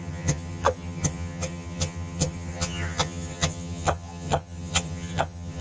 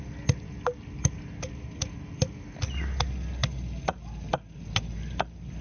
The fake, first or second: first